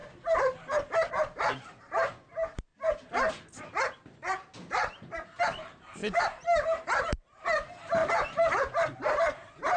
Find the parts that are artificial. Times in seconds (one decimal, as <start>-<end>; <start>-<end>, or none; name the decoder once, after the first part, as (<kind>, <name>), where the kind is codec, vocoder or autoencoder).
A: 1.1-2.7 (vocoder, BigVGAN v2); 5.4-9.8